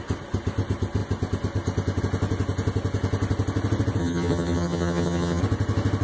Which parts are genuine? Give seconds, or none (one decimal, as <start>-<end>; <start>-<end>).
0.0-4.0; 5.4-6.0